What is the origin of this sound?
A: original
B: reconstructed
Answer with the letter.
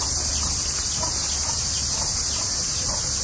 A